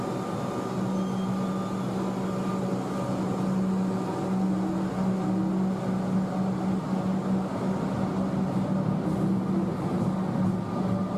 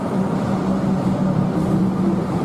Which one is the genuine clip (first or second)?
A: first